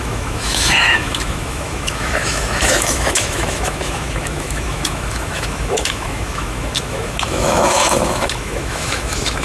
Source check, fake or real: fake